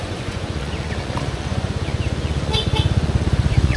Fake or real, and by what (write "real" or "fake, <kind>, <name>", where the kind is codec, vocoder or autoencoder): fake, vocoder, Vocos